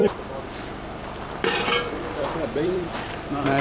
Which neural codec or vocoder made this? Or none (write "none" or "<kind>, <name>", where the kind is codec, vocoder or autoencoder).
vocoder, BigVGAN v2